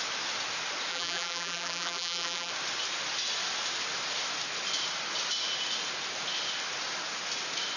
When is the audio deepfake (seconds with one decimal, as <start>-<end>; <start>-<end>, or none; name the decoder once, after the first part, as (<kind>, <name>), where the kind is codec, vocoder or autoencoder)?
0.9-2.5 (vocoder, BigVGAN v2)